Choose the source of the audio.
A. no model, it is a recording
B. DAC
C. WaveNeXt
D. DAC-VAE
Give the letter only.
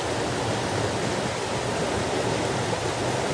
A